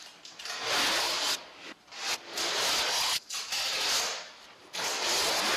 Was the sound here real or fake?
real